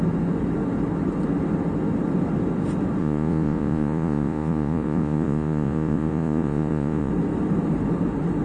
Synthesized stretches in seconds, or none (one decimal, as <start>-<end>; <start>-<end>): 3.0-7.1